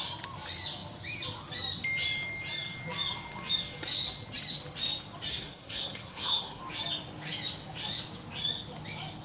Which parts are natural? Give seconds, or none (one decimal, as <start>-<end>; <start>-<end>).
0.0-5.3; 6.6-9.2